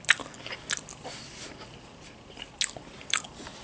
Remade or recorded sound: recorded